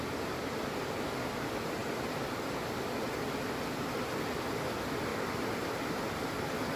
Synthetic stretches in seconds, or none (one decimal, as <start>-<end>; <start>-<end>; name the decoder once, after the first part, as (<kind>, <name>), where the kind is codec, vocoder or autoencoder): none